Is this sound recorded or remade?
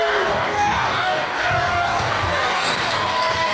remade